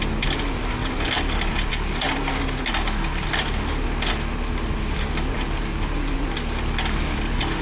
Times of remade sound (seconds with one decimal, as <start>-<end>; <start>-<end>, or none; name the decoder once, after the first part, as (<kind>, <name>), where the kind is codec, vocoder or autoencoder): none